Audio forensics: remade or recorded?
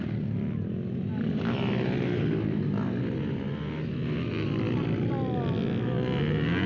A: recorded